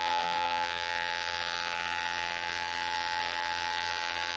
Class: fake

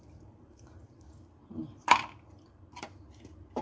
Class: fake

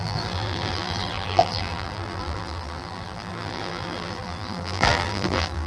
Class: fake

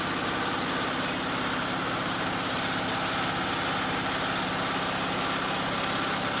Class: real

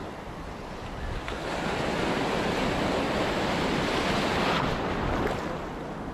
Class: real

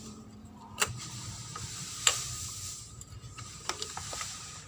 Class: fake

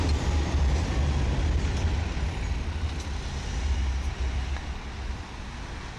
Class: real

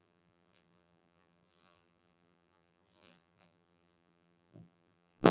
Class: fake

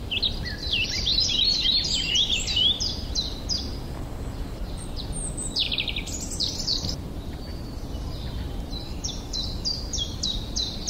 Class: fake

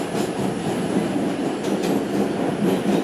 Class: real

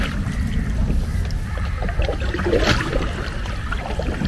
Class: fake